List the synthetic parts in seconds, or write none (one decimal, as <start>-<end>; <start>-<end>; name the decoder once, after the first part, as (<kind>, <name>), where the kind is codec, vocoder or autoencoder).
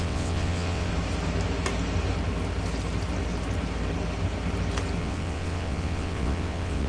0.0-0.9 (vocoder, WaveNeXt); 5.0-6.9